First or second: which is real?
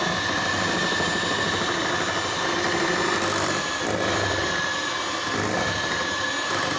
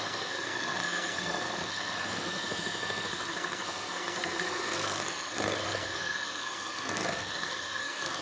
first